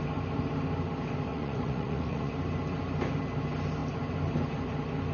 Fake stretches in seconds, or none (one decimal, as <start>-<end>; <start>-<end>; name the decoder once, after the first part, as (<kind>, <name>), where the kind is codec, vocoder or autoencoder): 1.3-2.3 (vocoder, Vocos)